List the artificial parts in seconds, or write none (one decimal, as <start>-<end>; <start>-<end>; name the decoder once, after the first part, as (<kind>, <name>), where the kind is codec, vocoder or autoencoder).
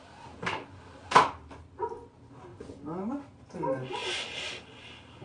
0.0-0.8 (vocoder, BigVGAN v2); 4.0-4.6